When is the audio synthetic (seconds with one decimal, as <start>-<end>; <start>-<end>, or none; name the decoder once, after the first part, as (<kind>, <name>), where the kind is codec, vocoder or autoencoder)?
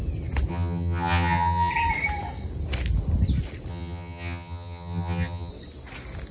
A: 0.5-1.7 (vocoder, HiFi-GAN); 3.7-5.5